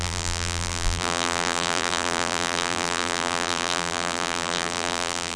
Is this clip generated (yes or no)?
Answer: yes